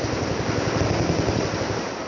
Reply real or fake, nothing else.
real